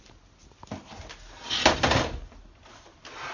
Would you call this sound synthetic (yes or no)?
no